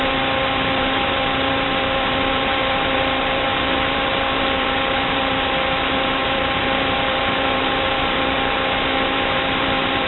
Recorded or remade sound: remade